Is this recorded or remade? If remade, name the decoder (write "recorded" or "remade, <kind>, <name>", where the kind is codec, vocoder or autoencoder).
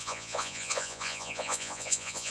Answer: remade, vocoder, Vocos